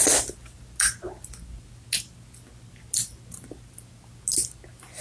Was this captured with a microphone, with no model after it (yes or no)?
yes